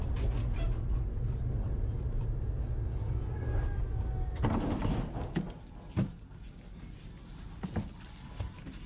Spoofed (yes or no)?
no